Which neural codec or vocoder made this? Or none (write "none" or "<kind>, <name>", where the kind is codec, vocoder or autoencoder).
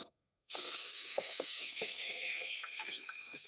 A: codec, SNAC